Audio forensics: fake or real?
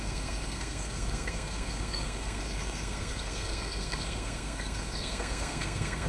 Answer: fake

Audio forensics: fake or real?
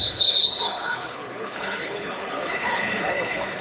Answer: fake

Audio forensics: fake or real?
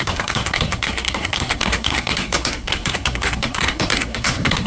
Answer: fake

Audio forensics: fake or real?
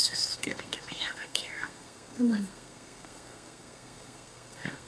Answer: fake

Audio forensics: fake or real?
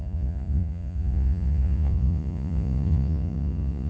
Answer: fake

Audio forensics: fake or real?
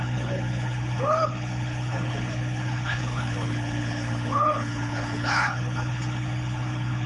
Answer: fake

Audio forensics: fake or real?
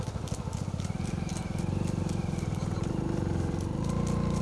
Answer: real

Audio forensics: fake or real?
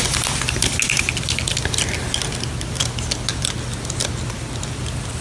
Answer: real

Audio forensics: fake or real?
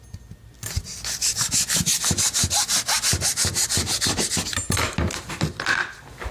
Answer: real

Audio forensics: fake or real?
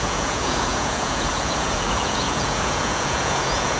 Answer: fake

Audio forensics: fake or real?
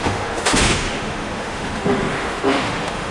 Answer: fake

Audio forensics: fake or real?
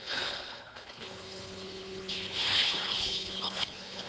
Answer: fake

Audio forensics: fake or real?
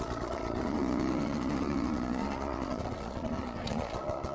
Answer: fake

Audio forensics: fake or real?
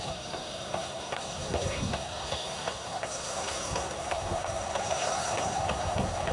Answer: fake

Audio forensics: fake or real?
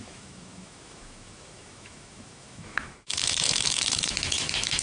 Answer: fake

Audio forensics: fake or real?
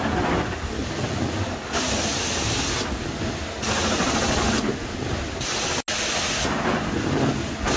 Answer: real